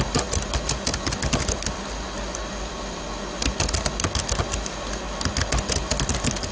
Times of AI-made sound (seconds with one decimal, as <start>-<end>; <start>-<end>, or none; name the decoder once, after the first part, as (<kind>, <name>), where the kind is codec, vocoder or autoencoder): none